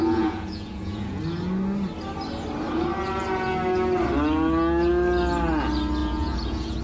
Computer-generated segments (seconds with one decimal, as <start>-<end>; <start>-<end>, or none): 0.0-1.2; 6.0-6.8